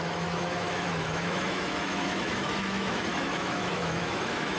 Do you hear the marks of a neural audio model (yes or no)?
yes